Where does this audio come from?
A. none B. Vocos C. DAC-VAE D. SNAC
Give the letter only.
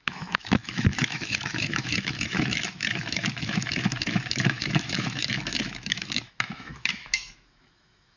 C